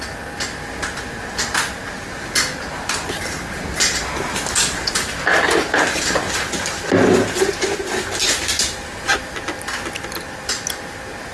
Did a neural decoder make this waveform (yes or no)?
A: no